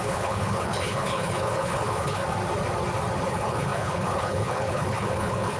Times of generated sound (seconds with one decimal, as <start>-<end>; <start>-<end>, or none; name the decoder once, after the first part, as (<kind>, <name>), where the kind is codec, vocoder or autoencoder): 0.0-2.2 (codec, HILCodec); 3.3-5.6